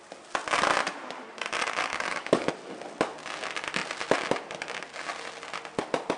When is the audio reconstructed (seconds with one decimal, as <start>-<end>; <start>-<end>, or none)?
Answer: 1.9-2.5